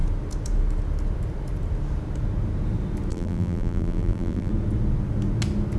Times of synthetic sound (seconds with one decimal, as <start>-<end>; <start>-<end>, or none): 3.1-4.5